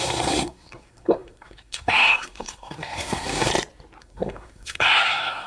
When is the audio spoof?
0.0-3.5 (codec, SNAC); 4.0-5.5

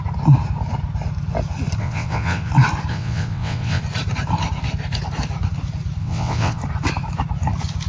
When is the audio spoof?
1.8-2.5 (vocoder, WaveNeXt); 2.9-3.8; 6.0-6.6

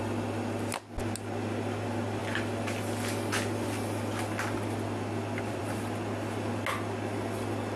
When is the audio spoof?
none

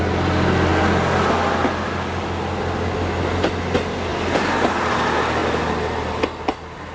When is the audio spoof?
none

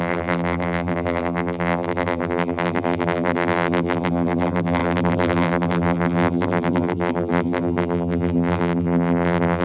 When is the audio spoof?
0.0-9.6 (vocoder, BigVGAN v2)